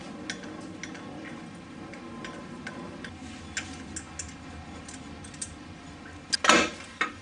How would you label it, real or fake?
real